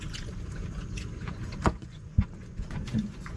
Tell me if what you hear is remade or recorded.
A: remade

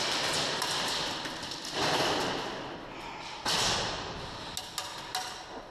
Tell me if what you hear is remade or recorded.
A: recorded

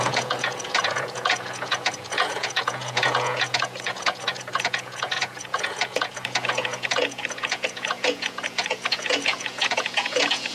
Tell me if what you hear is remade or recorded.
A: remade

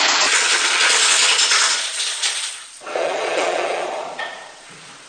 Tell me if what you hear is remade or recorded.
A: remade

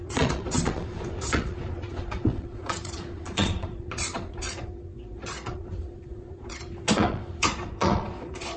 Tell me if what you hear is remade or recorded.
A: remade